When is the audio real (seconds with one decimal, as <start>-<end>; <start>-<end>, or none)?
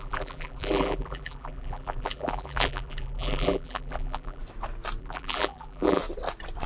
4.4-5.0; 6.0-6.7